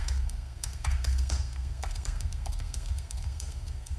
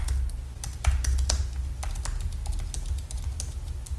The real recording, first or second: second